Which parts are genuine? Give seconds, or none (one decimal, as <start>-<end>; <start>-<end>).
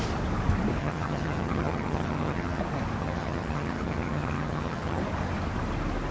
0.0-0.8; 2.6-3.0; 5.0-6.1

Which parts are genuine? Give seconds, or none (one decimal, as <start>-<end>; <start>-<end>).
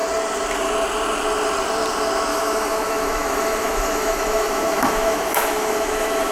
0.0-2.3